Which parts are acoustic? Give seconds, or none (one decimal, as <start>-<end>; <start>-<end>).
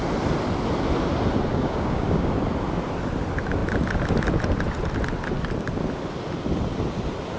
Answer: 0.0-1.5; 2.3-7.4